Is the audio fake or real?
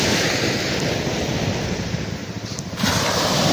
real